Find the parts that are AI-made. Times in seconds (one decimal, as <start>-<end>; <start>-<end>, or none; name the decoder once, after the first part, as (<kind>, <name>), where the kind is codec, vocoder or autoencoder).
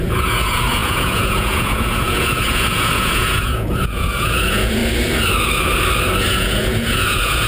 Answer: 0.0-4.8 (vocoder, Vocos); 6.2-7.5